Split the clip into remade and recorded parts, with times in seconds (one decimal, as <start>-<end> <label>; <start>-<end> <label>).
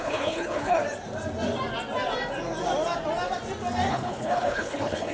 0.0-0.8 remade; 0.8-3.9 recorded; 3.9-5.1 remade